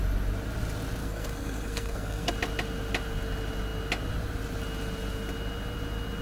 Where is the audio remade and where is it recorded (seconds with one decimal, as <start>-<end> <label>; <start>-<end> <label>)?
0.0-1.0 recorded; 1.0-2.3 remade; 2.3-6.2 recorded